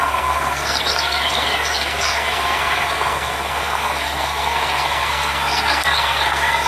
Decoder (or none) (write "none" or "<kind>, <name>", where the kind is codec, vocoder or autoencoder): codec, SNAC